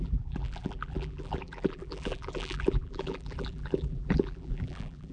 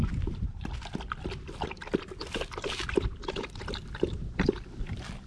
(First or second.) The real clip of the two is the second